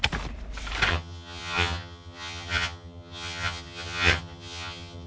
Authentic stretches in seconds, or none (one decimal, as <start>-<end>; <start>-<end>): 0.0-0.9